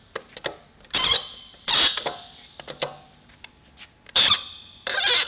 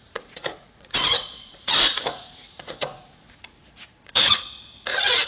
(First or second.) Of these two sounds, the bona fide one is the first